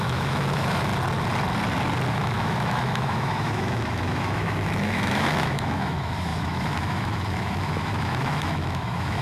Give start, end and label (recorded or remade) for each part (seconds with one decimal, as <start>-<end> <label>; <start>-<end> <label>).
0.0-0.9 remade; 0.9-2.1 recorded; 2.1-9.2 remade